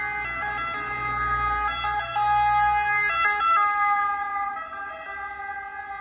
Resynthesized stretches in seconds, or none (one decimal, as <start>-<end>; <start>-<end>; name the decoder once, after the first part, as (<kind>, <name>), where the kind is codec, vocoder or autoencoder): none